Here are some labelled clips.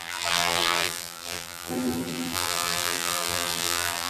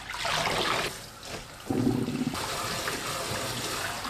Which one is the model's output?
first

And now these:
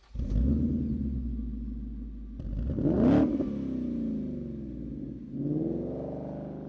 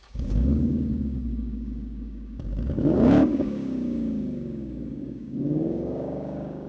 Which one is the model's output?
second